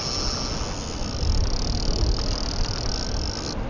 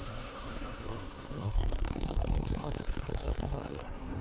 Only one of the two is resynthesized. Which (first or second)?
second